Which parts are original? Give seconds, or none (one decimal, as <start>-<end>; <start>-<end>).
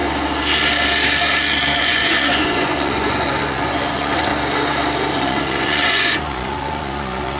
0.0-1.8; 4.3-5.1